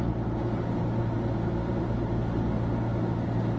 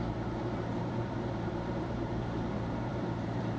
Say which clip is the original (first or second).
first